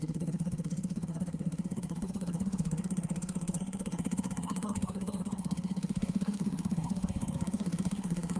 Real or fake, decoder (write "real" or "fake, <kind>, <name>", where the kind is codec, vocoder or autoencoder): fake, codec, SNAC